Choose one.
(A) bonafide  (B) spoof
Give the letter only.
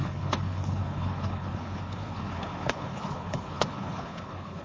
B